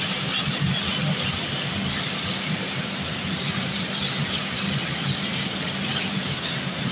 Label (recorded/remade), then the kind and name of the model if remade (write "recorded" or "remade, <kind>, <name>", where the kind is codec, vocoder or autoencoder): recorded